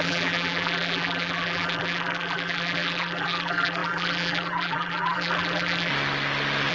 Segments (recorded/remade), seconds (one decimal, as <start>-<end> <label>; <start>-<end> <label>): 0.0-5.9 remade; 5.9-6.7 recorded